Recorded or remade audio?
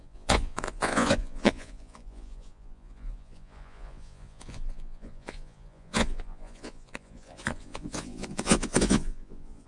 remade